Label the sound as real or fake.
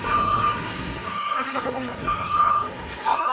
fake